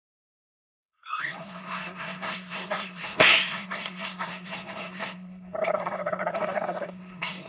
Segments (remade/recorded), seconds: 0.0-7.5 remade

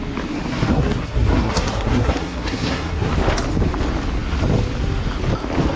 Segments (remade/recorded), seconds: 0.0-0.5 recorded; 0.5-3.1 remade; 3.1-5.8 recorded

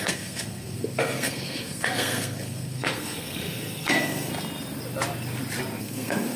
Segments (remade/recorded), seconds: 0.0-4.3 remade; 4.3-5.8 recorded; 5.8-6.4 remade

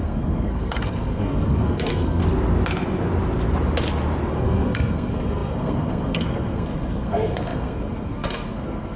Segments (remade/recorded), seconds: 0.0-2.2 remade; 2.2-4.3 recorded; 4.3-9.0 remade

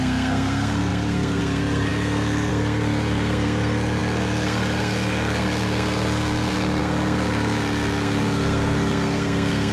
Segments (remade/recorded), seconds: 0.0-9.7 remade

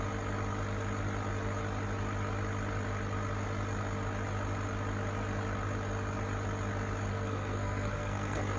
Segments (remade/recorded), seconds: 0.0-7.1 recorded; 7.1-8.6 remade